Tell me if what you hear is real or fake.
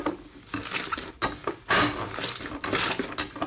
real